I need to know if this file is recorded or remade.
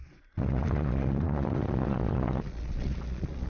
remade